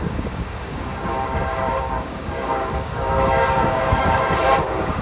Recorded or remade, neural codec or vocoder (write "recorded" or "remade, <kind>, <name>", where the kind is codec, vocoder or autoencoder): remade, codec, DAC